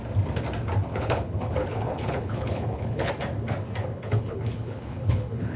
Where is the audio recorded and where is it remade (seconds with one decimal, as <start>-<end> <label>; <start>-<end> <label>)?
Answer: 0.0-0.9 recorded; 0.9-3.1 remade; 3.1-3.8 recorded; 3.8-5.6 remade